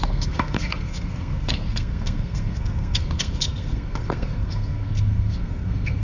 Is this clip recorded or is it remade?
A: remade